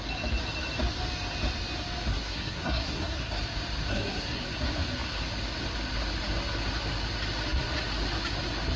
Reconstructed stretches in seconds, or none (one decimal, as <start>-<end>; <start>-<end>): 2.1-3.4; 3.9-4.4